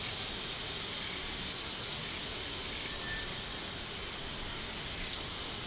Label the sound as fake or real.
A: real